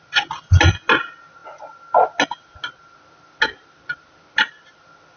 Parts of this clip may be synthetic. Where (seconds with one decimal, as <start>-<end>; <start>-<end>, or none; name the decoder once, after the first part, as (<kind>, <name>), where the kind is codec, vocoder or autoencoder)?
none